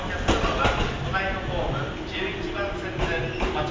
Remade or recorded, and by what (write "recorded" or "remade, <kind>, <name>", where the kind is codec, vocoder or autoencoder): recorded